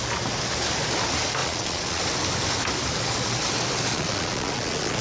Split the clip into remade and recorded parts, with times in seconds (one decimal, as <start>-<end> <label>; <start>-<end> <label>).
0.0-1.4 recorded; 1.4-2.0 remade; 2.0-3.9 recorded; 3.9-5.0 remade